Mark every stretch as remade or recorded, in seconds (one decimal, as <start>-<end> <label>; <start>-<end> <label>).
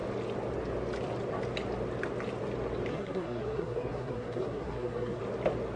0.0-2.9 recorded; 2.9-5.2 remade; 5.2-5.8 recorded